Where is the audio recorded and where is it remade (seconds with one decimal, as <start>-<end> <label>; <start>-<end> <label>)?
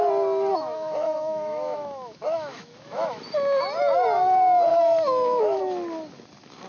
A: 0.0-0.5 recorded; 0.5-3.2 remade; 3.2-4.7 recorded; 4.7-5.6 remade; 5.6-6.7 recorded